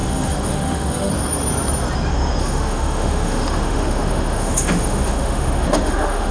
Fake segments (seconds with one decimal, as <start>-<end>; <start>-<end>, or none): 0.0-1.1; 2.4-6.3

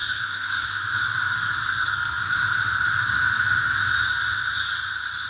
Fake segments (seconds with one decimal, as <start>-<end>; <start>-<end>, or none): 0.0-0.9; 1.6-2.3